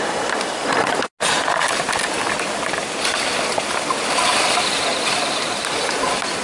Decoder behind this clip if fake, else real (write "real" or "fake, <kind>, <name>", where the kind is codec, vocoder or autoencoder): real